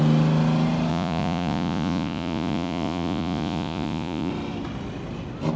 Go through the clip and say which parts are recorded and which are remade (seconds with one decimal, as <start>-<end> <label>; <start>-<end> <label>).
0.0-0.9 recorded; 0.9-4.3 remade; 4.3-5.6 recorded